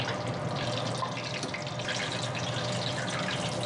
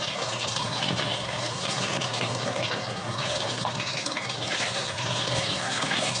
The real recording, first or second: first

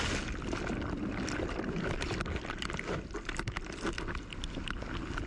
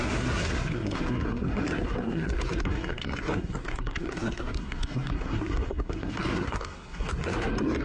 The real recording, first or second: first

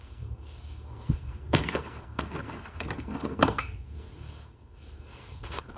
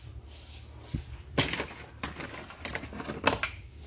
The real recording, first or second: second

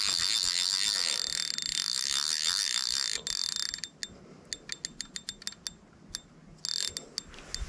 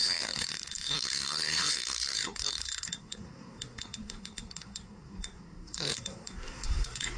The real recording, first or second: first